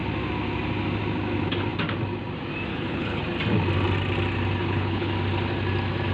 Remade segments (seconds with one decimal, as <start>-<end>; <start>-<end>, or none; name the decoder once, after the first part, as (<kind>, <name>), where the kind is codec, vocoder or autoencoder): 2.7-3.2 (codec, HILCodec); 4.6-5.1